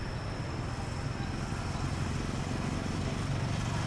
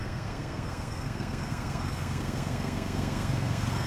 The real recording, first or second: first